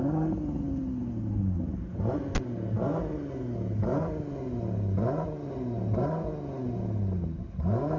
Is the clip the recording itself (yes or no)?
yes